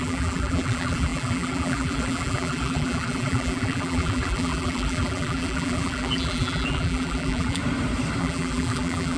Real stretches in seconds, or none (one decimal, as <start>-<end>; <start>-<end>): 7.6-8.2